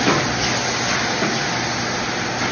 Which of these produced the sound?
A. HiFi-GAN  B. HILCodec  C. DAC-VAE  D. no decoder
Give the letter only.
D